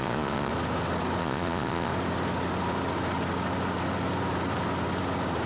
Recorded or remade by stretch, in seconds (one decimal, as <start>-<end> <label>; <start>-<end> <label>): 0.0-0.5 remade; 0.5-1.2 recorded; 1.2-1.9 remade; 1.9-5.5 recorded